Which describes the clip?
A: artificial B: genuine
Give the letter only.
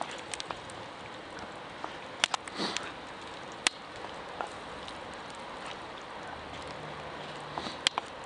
B